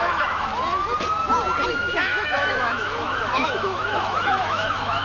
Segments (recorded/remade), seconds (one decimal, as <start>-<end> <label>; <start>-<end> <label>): 0.0-0.5 remade; 0.5-1.7 recorded; 1.7-5.0 remade